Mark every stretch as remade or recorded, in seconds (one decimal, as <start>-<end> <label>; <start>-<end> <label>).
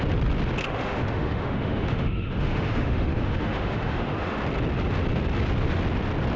0.0-0.6 recorded; 0.6-4.4 remade; 4.4-6.4 recorded